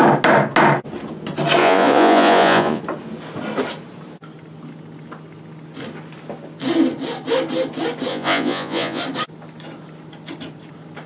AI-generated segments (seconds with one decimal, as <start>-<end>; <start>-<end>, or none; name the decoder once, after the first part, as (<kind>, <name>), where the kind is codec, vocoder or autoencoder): 1.6-2.8 (vocoder, Vocos); 8.1-9.0